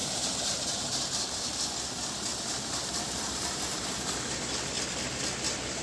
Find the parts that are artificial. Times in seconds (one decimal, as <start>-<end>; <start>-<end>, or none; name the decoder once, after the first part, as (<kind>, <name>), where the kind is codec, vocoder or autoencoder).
0.0-1.6 (vocoder, BigVGAN v2); 2.3-4.0